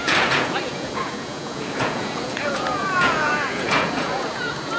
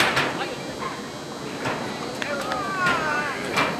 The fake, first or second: first